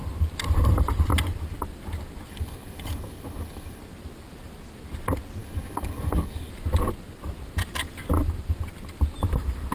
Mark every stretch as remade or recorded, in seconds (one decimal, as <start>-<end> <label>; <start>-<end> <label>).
0.0-2.3 recorded; 2.3-3.8 remade; 3.8-5.4 recorded; 5.4-6.5 remade; 6.5-9.7 recorded